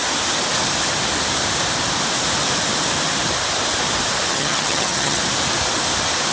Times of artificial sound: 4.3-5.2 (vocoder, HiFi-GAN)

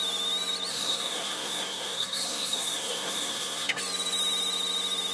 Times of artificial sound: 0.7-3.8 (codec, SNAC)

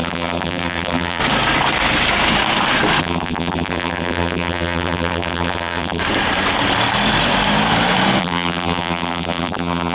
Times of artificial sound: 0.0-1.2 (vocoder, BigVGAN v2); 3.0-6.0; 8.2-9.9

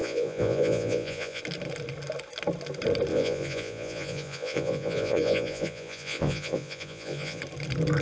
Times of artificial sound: 0.0-1.4 (vocoder, Vocos); 3.1-7.4

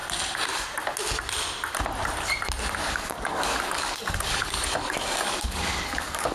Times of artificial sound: 2.8-6.3 (codec, DAC)

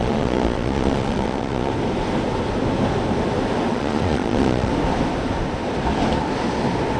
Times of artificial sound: 0.0-1.7 (vocoder, Vocos); 3.7-4.7

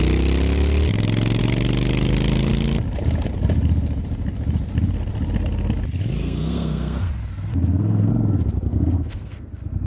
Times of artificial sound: 6.2-7.1 (codec, SNAC); 7.5-8.1; 8.7-9.5

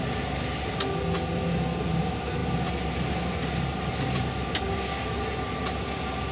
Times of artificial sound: none